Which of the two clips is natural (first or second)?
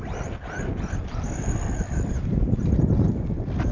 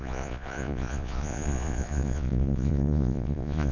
first